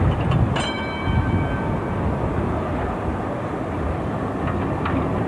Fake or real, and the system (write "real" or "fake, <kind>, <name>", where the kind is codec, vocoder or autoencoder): real